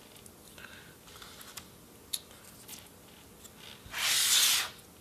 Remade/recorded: recorded